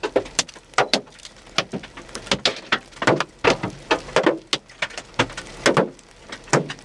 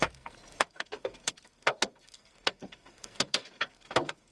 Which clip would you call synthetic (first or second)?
second